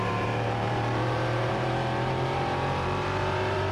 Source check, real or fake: fake